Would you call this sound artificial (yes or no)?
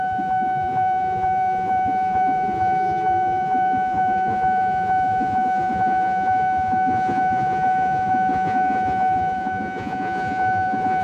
yes